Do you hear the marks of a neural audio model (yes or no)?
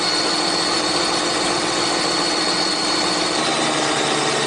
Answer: no